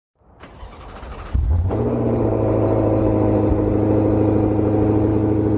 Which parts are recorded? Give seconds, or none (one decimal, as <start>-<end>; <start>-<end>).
0.0-1.1; 3.0-5.6